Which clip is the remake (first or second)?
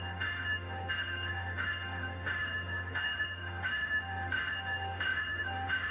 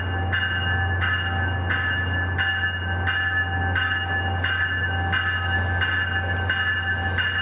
first